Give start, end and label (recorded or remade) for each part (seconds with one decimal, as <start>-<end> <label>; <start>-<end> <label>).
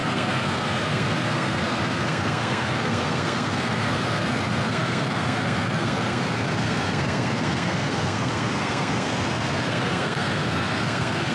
0.0-11.3 remade